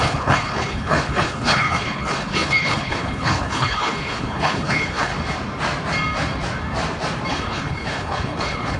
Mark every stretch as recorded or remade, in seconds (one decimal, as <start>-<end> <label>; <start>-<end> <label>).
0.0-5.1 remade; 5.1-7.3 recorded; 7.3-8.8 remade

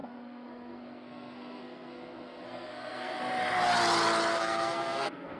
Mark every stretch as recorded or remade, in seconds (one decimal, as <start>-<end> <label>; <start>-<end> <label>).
0.0-3.2 remade; 3.2-4.3 recorded; 4.3-5.4 remade

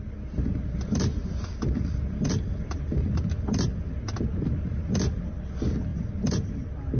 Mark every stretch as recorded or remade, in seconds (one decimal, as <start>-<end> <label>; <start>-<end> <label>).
0.0-1.2 recorded; 1.2-3.9 remade; 3.9-5.9 recorded; 5.9-7.0 remade

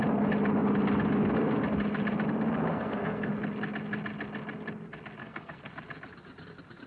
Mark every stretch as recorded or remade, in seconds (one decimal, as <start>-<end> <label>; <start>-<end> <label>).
0.0-2.7 recorded; 2.7-3.3 remade; 3.3-5.2 recorded; 5.2-5.7 remade; 5.7-6.9 recorded